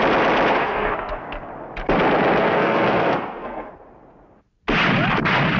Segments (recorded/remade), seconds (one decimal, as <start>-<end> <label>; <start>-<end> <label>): 0.0-0.6 recorded; 0.6-1.5 remade; 1.5-2.4 recorded; 2.4-3.7 remade; 3.7-5.6 recorded